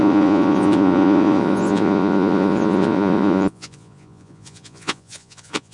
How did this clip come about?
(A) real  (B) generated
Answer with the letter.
B